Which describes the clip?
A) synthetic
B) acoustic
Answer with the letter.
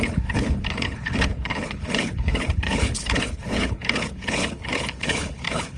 A